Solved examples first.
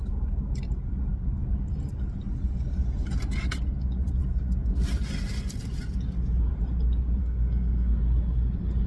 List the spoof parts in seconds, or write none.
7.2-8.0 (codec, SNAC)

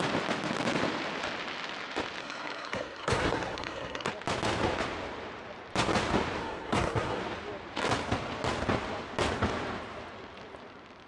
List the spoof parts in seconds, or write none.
2.2-4.1 (codec, SNAC); 6.4-7.2

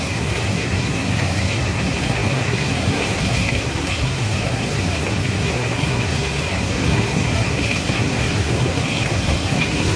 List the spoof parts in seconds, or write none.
0.0-10.0 (codec, SNAC)

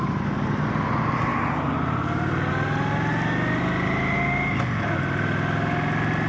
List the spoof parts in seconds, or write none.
none

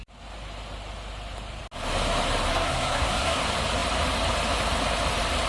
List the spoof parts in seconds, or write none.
2.5-3.4 (codec, SNAC)